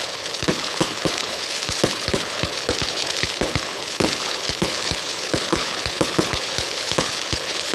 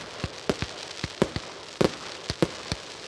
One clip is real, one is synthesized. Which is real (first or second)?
second